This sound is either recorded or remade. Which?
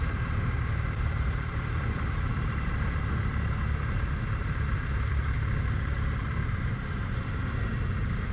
remade